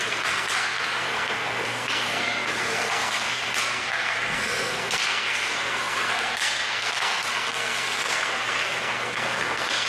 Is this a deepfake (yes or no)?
yes